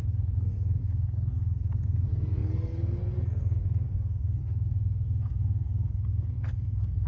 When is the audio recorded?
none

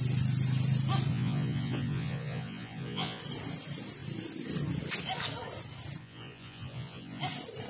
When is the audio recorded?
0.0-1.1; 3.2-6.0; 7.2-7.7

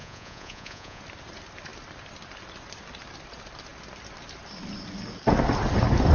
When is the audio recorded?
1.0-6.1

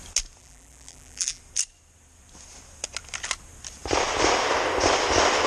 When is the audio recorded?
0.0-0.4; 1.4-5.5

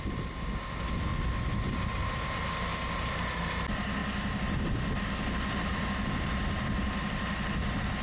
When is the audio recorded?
0.0-2.7; 3.3-8.0

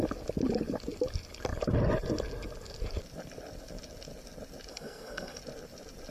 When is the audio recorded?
0.0-4.7; 5.4-6.1

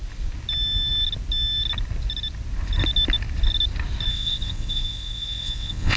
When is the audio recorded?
0.0-4.1